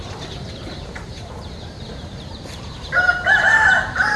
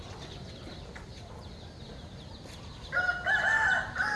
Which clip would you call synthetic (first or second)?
first